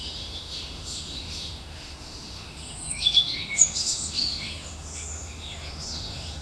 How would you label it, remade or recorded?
remade